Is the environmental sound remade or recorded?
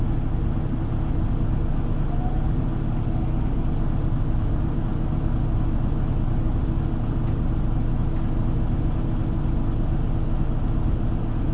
recorded